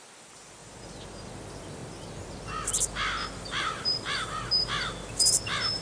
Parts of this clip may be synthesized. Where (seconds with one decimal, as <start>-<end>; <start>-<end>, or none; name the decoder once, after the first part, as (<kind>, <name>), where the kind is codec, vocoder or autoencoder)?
0.0-0.6 (vocoder, BigVGAN v2); 1.3-5.8